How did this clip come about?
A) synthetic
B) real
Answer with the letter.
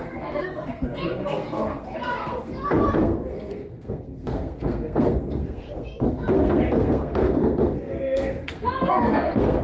A